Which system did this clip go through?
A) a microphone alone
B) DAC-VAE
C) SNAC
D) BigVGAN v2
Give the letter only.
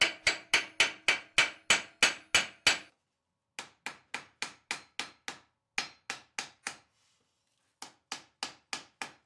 A